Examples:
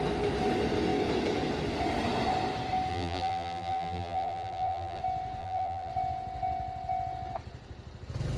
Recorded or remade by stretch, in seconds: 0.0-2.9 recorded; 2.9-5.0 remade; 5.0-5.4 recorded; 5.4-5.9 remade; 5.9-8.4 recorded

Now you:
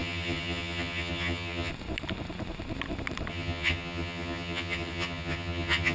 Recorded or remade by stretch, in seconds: 0.0-1.7 remade; 1.7-3.3 recorded; 3.3-5.9 remade

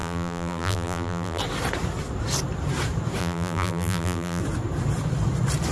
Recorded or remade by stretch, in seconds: 0.0-1.4 remade; 1.4-3.2 recorded; 3.2-4.4 remade; 4.4-5.7 recorded

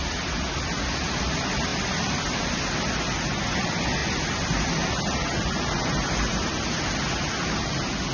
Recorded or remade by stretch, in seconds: 0.0-1.7 recorded; 1.7-2.4 remade; 2.4-4.0 recorded; 4.0-5.0 remade; 5.0-8.1 recorded

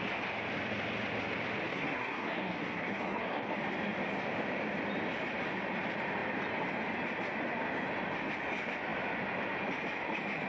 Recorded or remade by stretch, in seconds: 0.0-1.7 recorded; 1.7-3.5 remade; 3.5-10.5 recorded

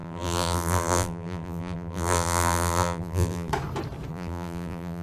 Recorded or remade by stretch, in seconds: 0.0-3.5 remade; 3.5-4.1 recorded; 4.1-5.0 remade